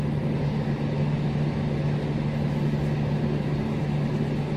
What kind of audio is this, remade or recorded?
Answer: recorded